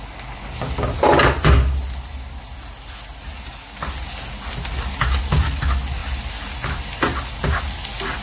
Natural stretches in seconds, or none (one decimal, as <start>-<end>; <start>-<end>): 0.0-8.2

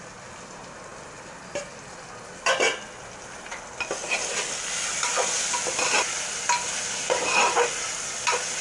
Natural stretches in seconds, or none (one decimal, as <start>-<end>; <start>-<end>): 0.0-8.6

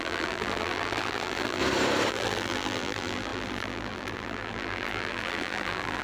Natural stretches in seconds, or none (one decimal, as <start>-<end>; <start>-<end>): 1.6-2.1

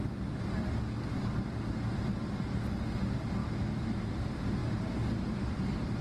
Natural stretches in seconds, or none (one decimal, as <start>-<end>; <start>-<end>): 0.0-3.4; 4.1-6.0

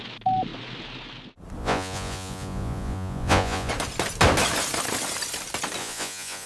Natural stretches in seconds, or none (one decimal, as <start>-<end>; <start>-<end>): 0.0-1.6; 3.7-5.8

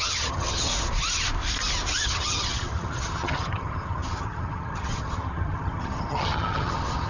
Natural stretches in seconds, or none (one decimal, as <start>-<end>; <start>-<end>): 0.7-2.0

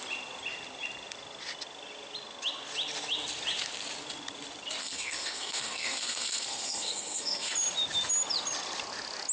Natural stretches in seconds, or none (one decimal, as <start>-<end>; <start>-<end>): 0.0-4.8; 7.5-9.3

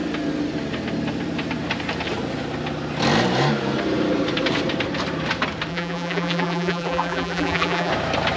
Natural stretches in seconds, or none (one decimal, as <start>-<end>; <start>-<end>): 0.0-5.7; 7.9-8.4